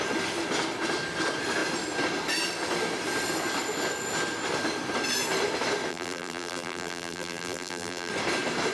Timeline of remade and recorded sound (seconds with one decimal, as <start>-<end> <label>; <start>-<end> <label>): 0.0-5.9 recorded; 5.9-8.1 remade; 8.1-8.7 recorded